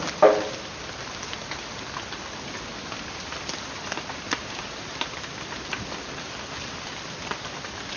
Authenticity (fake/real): real